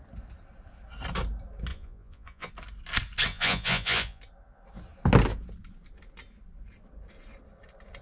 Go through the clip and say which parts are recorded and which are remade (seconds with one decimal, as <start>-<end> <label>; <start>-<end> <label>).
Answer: 0.0-1.7 recorded; 1.7-2.5 remade; 2.5-3.3 recorded; 3.3-4.2 remade; 4.2-8.0 recorded